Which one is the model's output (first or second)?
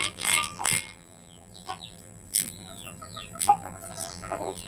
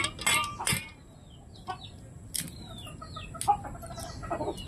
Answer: first